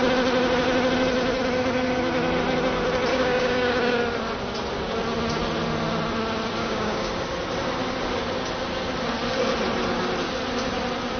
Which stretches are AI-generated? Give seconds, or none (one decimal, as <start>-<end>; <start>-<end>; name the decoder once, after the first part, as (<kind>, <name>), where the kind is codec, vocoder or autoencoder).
3.1-4.0 (codec, DAC); 6.6-7.1